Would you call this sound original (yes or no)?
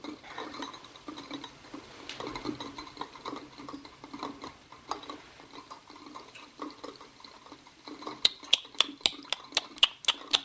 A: yes